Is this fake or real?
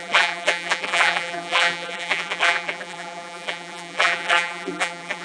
fake